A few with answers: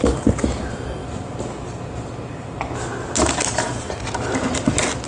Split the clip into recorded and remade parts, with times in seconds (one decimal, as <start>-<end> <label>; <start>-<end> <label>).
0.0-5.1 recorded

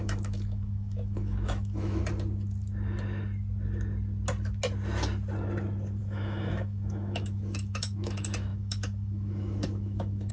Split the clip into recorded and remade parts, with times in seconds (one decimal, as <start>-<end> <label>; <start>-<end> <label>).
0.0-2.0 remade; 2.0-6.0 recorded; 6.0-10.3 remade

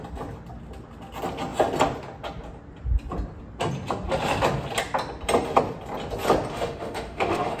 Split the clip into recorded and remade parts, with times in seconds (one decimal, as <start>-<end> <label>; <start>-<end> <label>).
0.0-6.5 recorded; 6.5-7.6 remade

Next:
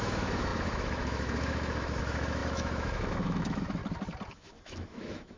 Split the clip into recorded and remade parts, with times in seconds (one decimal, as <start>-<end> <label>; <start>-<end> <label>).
0.0-3.8 remade; 3.8-4.3 recorded; 4.3-5.4 remade

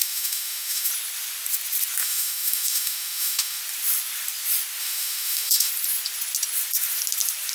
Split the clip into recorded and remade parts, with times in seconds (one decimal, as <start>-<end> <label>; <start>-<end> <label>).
0.0-0.9 remade; 0.9-2.0 recorded; 2.0-3.6 remade; 3.6-4.8 recorded; 4.8-5.7 remade; 5.7-7.5 recorded

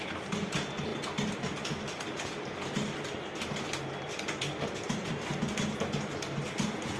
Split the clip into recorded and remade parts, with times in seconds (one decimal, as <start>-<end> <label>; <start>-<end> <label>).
0.0-7.0 recorded

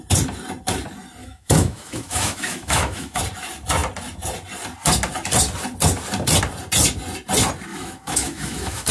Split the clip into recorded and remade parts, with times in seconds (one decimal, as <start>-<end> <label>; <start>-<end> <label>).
0.0-1.2 recorded; 1.2-3.2 remade; 3.2-7.7 recorded; 7.7-8.9 remade